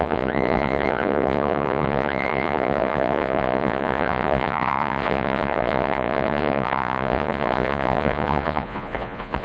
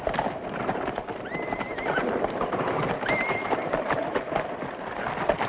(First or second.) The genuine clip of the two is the second